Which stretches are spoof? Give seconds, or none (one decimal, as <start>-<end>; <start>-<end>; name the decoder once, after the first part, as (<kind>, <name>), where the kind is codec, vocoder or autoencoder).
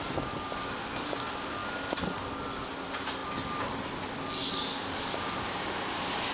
none